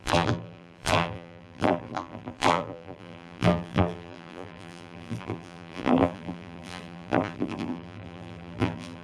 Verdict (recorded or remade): remade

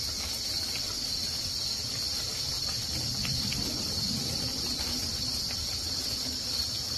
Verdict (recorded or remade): recorded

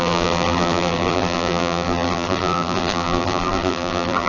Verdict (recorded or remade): remade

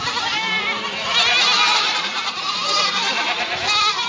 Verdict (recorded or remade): recorded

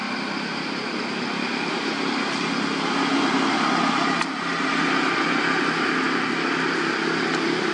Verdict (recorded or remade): recorded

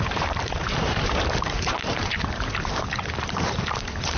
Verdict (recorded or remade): remade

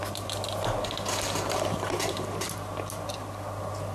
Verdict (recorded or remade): recorded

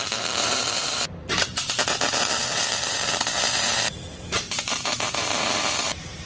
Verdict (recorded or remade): remade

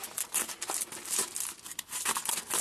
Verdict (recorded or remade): recorded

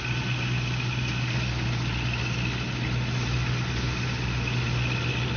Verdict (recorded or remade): recorded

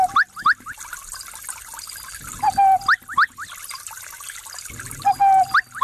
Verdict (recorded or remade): recorded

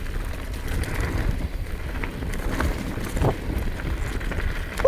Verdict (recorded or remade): recorded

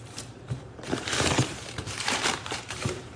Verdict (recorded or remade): remade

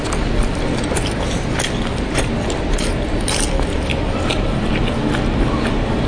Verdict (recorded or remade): recorded